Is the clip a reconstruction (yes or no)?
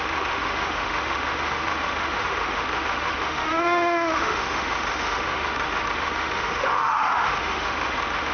yes